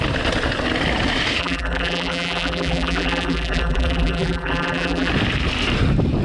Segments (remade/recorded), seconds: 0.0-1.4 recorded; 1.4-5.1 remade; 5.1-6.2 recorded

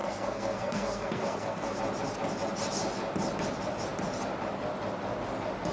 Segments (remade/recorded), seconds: 0.0-1.8 remade; 1.8-5.7 recorded

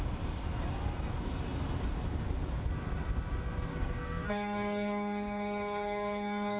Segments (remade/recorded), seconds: 0.0-3.7 recorded; 3.7-6.6 remade

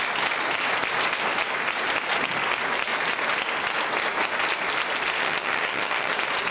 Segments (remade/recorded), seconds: 0.0-5.2 recorded; 5.2-6.1 remade; 6.1-6.5 recorded

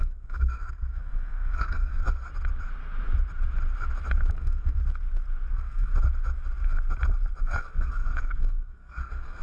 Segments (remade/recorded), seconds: 0.0-2.0 remade; 2.0-4.3 recorded; 4.3-4.8 remade; 4.8-5.5 recorded; 5.5-5.9 remade; 5.9-7.4 recorded; 7.4-9.4 remade

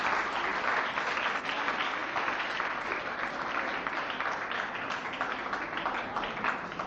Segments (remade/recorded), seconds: 0.0-6.9 recorded

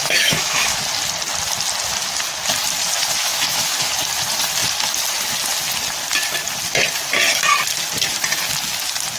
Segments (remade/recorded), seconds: 0.0-0.8 remade; 0.8-3.2 recorded; 3.2-3.9 remade; 3.9-9.2 recorded

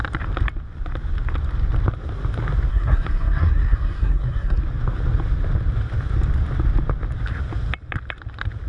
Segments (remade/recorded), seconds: 0.0-2.7 recorded; 2.7-4.6 remade; 4.6-8.7 recorded